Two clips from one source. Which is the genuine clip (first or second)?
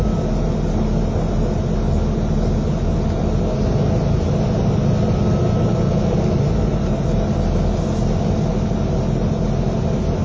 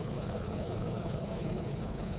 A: first